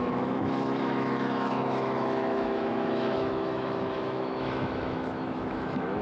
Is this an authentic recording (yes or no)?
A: no